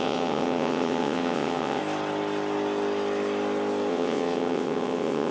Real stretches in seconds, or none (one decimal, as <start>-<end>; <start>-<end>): 1.8-3.9